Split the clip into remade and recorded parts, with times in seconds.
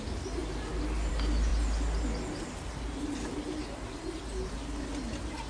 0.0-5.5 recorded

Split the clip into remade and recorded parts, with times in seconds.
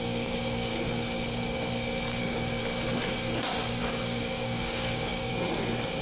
0.0-0.7 remade; 0.7-2.2 recorded; 2.2-2.6 remade; 2.6-3.8 recorded; 3.8-5.3 remade; 5.3-6.0 recorded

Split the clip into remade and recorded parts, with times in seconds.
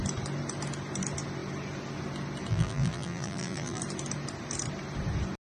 0.0-2.5 recorded; 2.5-3.8 remade; 3.8-5.6 recorded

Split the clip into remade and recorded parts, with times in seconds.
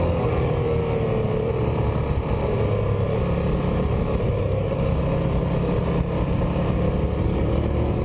0.0-0.8 remade; 0.8-4.4 recorded; 4.4-4.9 remade; 4.9-7.2 recorded; 7.2-8.0 remade